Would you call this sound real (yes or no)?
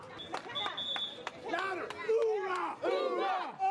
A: yes